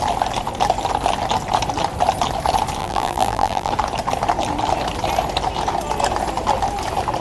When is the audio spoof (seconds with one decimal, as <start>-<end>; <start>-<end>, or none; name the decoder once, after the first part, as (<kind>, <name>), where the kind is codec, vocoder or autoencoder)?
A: 2.8-3.7 (vocoder, BigVGAN v2)